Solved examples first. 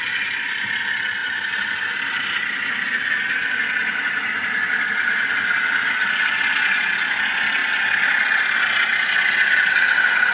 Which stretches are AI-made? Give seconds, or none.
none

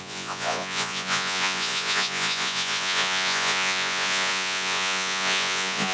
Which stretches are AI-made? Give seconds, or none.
0.0-5.9 (vocoder, Vocos)

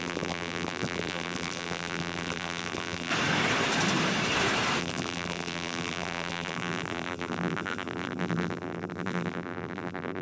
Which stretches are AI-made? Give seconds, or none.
0.0-3.1 (vocoder, BigVGAN v2); 4.8-10.2

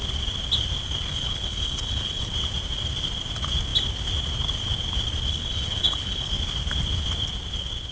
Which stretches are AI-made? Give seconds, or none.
1.1-2.3 (codec, HILCodec); 5.3-6.3

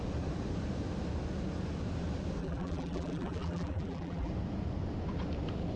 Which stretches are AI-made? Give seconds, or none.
2.4-4.3 (vocoder, BigVGAN v2)

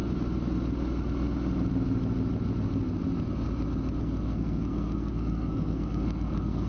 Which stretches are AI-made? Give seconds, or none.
4.0-6.7 (codec, SNAC)

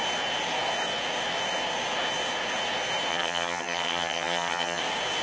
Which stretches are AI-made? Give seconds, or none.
3.1-4.8 (vocoder, HiFi-GAN)